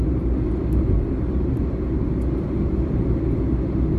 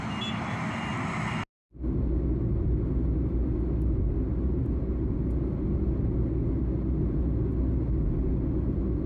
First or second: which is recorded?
second